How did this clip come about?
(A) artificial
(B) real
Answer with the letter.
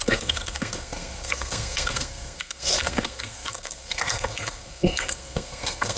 A